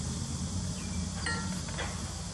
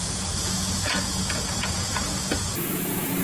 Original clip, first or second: first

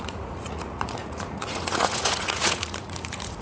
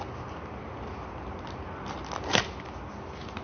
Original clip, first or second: second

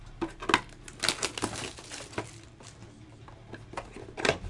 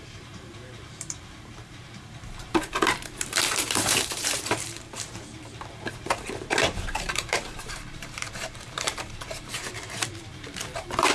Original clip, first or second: first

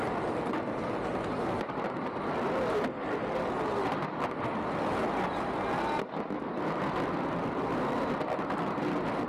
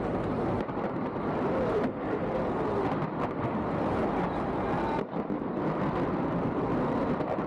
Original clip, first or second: first